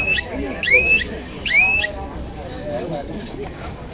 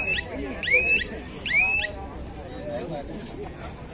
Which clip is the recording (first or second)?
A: second